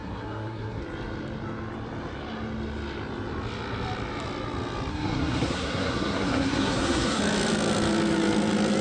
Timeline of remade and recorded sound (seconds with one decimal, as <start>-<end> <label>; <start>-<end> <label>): 0.0-0.8 remade; 0.8-4.9 recorded; 4.9-7.2 remade; 7.2-8.8 recorded